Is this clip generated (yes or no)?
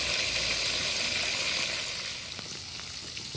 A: no